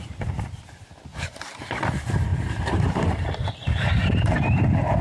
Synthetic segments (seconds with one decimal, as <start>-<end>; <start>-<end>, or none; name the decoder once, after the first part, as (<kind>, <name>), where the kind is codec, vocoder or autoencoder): 1.1-1.6 (vocoder, BigVGAN v2); 2.3-5.0